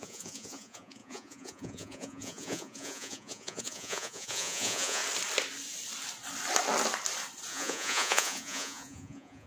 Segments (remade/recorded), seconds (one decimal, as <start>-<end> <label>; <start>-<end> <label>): 0.0-5.0 remade; 5.0-7.5 recorded; 7.5-9.5 remade